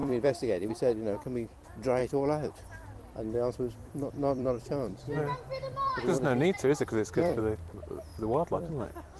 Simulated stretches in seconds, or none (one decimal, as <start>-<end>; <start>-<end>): 0.0-0.7; 3.8-7.4; 8.1-8.7